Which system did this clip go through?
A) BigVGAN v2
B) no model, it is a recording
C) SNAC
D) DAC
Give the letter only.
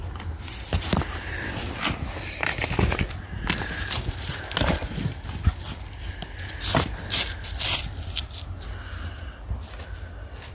B